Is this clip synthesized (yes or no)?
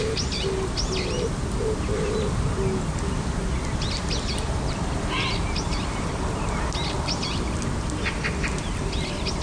no